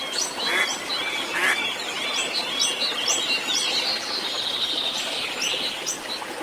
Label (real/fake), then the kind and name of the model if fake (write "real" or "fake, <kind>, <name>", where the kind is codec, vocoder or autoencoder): real